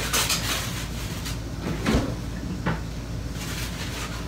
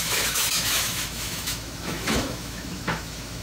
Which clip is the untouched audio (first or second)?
first